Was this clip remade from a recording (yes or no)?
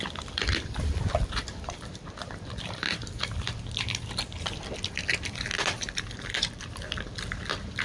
yes